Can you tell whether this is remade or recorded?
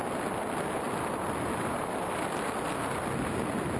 recorded